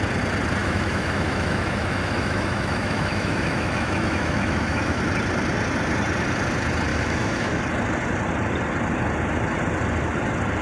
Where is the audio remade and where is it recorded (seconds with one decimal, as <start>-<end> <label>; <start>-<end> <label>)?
0.0-0.6 recorded; 0.6-5.0 remade; 5.0-6.9 recorded; 6.9-7.6 remade; 7.6-10.6 recorded